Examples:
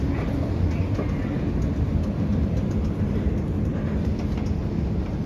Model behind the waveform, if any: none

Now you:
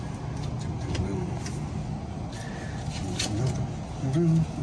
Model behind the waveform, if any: none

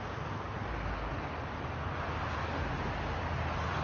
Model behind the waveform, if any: none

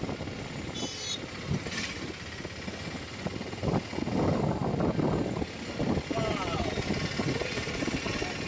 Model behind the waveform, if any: none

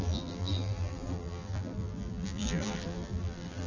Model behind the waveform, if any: vocoder, BigVGAN v2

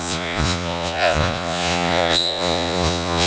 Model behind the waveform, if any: vocoder, Vocos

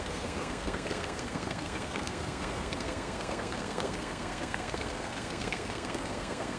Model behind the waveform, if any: codec, SNAC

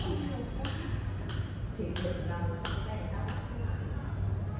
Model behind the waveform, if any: none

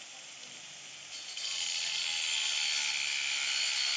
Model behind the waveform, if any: none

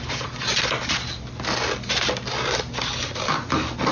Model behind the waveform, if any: none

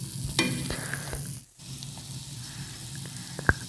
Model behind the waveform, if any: none